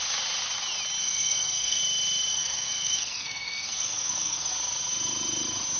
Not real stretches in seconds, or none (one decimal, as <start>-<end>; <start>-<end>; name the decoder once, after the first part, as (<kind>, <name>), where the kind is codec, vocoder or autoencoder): 1.0-1.8 (codec, SNAC); 2.3-4.5